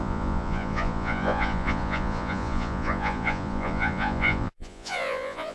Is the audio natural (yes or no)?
no